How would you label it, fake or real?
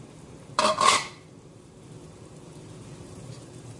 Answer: fake